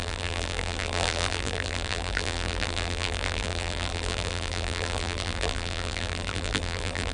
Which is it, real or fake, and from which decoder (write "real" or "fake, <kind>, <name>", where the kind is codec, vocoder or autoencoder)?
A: fake, vocoder, BigVGAN v2